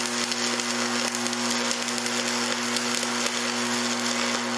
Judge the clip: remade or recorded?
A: recorded